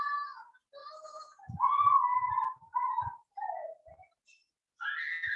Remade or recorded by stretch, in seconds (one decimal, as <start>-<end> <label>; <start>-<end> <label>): 0.0-0.8 recorded; 0.8-2.0 remade; 2.0-2.7 recorded; 2.7-3.4 remade; 3.4-5.4 recorded